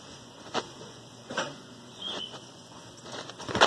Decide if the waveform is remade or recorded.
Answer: remade